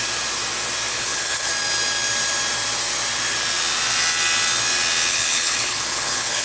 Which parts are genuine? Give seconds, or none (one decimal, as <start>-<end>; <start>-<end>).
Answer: 0.0-0.9; 1.5-5.1